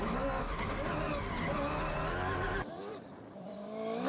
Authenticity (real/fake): real